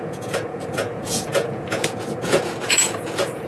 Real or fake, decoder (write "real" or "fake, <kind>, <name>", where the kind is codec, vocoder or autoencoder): fake, vocoder, Vocos